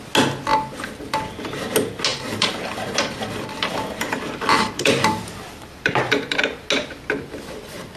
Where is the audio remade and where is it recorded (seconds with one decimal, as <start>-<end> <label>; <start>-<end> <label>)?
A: 0.0-2.1 recorded; 2.1-6.4 remade; 6.4-8.0 recorded